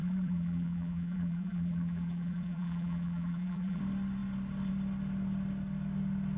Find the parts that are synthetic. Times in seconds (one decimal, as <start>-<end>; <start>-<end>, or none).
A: 0.0-3.8